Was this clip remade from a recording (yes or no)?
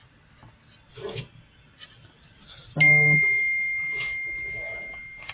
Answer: no